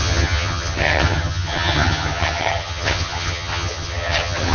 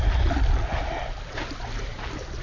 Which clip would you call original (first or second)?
second